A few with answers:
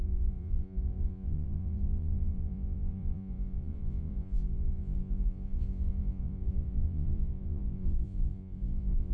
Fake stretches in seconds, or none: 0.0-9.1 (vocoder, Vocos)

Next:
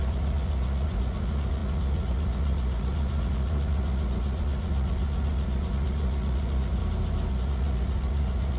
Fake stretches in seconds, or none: 0.0-6.8 (vocoder, Vocos); 7.3-8.6

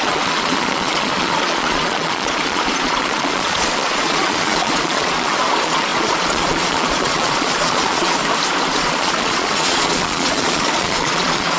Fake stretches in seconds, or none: 0.0-8.2 (vocoder, Vocos); 8.8-11.6

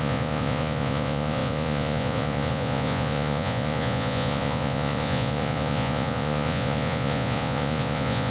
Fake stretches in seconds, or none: 0.0-8.3 (vocoder, Vocos)

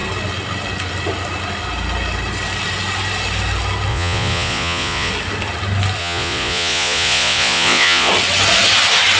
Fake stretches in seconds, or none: 3.9-5.1 (vocoder, Vocos); 6.0-8.1

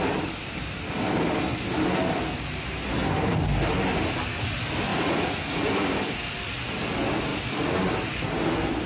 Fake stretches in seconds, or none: 4.9-5.7 (vocoder, Vocos)

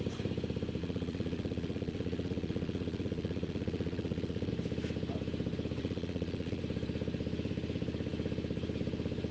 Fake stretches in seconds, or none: 0.8-4.5 (vocoder, Vocos); 5.8-6.6

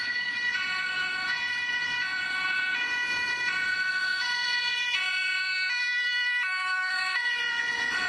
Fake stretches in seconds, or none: 0.0-5.5 (vocoder, Vocos); 6.9-8.1